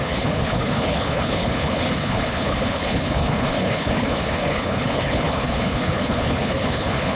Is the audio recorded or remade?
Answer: remade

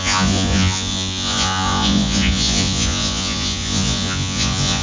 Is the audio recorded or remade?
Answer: remade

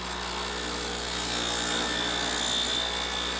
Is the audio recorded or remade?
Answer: recorded